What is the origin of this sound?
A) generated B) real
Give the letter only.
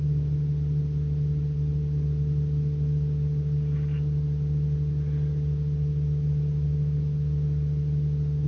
B